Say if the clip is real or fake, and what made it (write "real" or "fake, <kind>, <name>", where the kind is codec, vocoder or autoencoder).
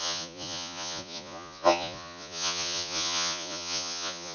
fake, vocoder, Vocos